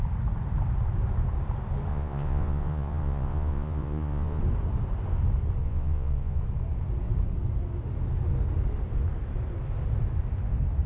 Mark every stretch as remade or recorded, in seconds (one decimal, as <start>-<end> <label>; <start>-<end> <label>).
0.0-1.9 recorded; 1.9-4.4 remade; 4.4-5.6 recorded; 5.6-6.4 remade; 6.4-10.9 recorded